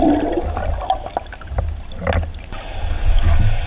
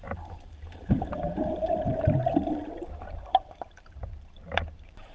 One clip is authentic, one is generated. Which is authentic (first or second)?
first